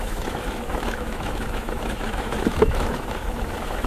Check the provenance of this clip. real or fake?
fake